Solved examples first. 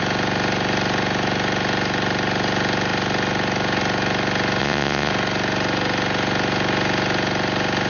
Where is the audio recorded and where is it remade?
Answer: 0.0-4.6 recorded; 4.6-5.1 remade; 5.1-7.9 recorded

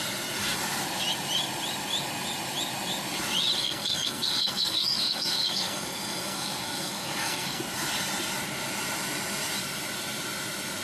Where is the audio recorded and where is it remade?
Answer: 0.0-3.6 recorded; 3.6-7.6 remade; 7.6-10.8 recorded

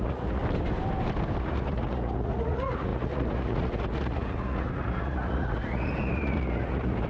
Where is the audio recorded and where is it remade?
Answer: 0.0-0.4 remade; 0.4-1.4 recorded; 1.4-7.1 remade